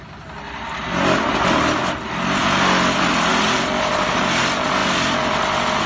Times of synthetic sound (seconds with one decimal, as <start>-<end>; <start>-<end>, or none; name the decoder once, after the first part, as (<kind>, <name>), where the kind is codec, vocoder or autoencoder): none